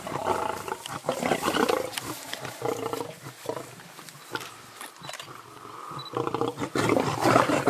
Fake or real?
real